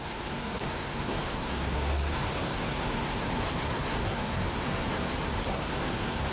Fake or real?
fake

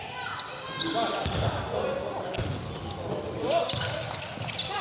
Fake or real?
real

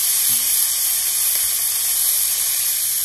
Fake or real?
real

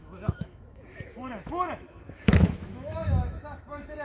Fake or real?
fake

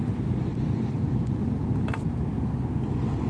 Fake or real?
real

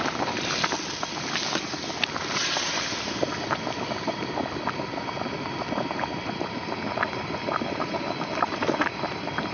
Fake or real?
real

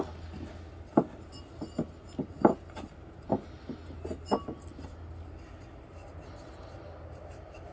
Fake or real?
real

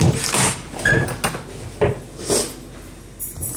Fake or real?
real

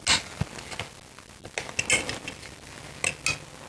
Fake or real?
real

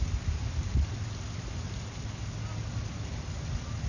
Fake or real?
real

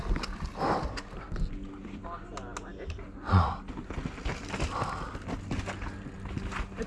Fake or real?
real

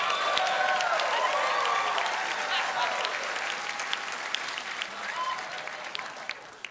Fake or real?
real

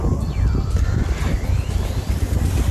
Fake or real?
real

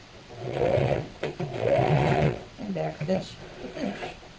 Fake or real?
fake